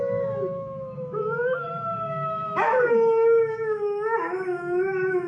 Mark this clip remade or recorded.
remade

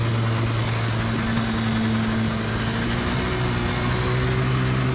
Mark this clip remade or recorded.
recorded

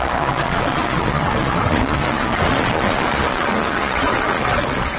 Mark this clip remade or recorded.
remade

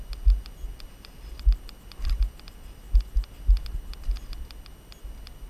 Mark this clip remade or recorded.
recorded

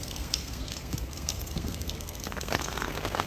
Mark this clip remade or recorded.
remade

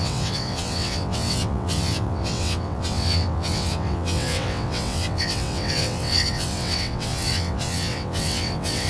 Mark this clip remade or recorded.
remade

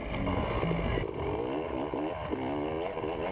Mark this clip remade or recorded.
recorded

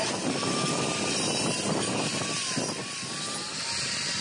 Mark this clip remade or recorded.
recorded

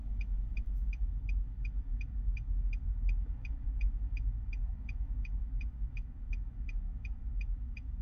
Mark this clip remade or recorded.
remade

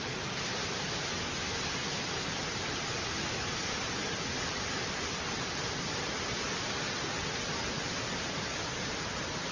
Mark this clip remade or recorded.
recorded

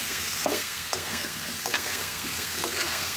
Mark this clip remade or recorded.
remade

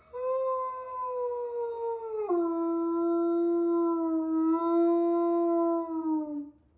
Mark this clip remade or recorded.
recorded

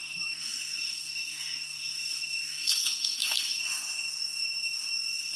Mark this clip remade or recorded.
remade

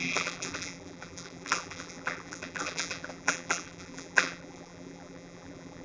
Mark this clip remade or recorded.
remade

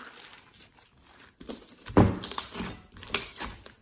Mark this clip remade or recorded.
recorded